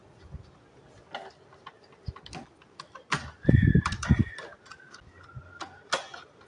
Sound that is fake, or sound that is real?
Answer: real